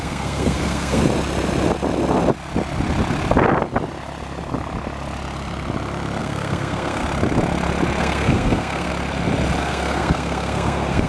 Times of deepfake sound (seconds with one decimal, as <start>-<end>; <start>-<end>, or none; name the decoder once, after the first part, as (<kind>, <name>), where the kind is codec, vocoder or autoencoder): 0.0-1.0 (codec, SNAC); 6.2-7.0; 8.0-8.9; 9.6-11.1